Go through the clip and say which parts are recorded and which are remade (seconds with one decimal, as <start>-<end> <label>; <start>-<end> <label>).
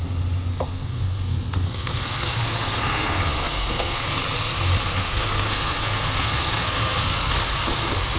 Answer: 0.0-0.5 recorded; 0.5-4.0 remade; 4.0-5.0 recorded; 5.0-7.3 remade; 7.3-8.2 recorded